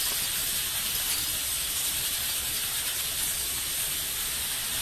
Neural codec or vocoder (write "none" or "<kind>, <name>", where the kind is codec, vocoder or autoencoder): none